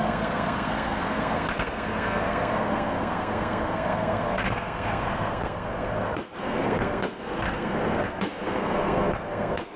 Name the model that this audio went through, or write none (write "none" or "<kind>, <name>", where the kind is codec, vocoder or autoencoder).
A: codec, SNAC